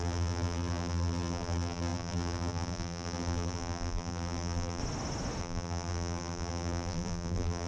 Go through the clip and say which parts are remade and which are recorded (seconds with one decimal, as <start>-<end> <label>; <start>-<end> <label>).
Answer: 0.0-4.8 remade; 4.8-5.4 recorded; 5.4-7.7 remade

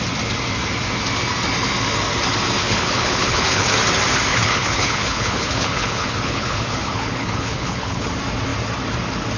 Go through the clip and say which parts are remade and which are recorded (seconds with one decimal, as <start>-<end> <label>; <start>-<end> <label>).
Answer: 0.0-2.6 recorded; 2.6-3.7 remade; 3.7-4.3 recorded; 4.3-8.1 remade; 8.1-9.4 recorded

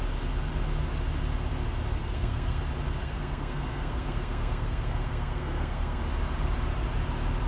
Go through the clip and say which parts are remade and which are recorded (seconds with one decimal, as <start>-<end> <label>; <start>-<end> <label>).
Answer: 0.0-2.0 recorded; 2.0-2.6 remade; 2.6-3.0 recorded; 3.0-6.0 remade; 6.0-7.5 recorded

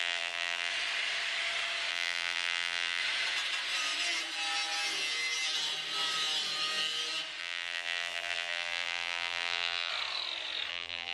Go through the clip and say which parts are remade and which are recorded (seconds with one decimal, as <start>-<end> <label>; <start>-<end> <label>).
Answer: 0.0-0.7 remade; 0.7-1.9 recorded; 1.9-3.0 remade; 3.0-7.4 recorded; 7.4-9.9 remade; 9.9-10.7 recorded; 10.7-11.1 remade

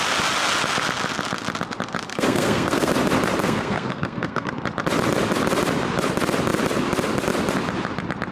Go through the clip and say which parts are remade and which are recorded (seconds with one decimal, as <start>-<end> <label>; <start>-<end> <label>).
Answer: 0.0-2.1 recorded; 2.1-2.9 remade; 2.9-3.4 recorded; 3.4-4.5 remade; 4.5-8.3 recorded

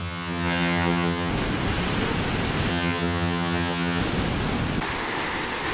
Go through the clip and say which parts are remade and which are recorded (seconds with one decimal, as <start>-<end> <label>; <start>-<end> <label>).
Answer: 0.0-1.3 remade; 1.3-2.7 recorded; 2.7-4.0 remade; 4.0-5.7 recorded

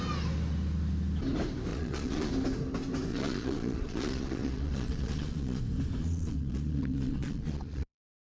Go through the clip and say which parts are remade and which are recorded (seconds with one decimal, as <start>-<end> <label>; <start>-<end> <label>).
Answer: 0.0-1.7 recorded; 1.7-2.3 remade; 2.3-3.1 recorded; 3.1-5.6 remade; 5.6-6.0 recorded; 6.0-8.3 remade